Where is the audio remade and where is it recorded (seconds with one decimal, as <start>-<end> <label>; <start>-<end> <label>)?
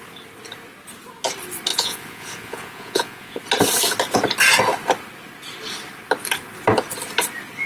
0.0-1.7 recorded; 1.7-3.4 remade; 3.4-7.7 recorded